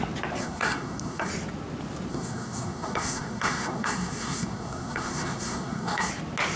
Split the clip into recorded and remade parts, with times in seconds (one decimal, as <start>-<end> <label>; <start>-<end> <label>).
0.0-0.4 recorded; 0.4-1.3 remade; 1.3-2.1 recorded; 2.1-6.1 remade; 6.1-6.6 recorded